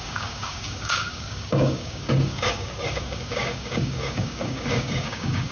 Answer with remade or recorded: remade